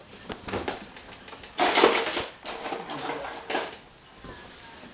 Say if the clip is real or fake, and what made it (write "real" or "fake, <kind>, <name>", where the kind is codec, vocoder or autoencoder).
real